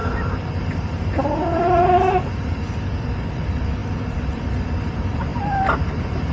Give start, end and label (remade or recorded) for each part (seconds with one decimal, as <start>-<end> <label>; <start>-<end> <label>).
0.0-1.8 remade; 1.8-5.3 recorded; 5.3-6.3 remade